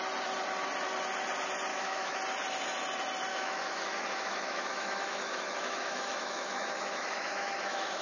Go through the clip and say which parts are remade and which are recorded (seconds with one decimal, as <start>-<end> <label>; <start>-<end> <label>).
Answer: 0.0-1.7 recorded; 1.7-2.2 remade; 2.2-3.3 recorded; 3.3-8.0 remade